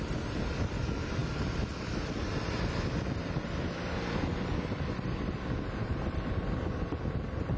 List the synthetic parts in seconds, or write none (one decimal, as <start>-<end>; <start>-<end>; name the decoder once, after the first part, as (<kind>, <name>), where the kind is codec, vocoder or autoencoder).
none